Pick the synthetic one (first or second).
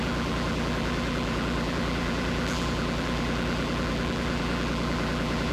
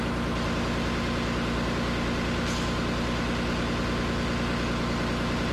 first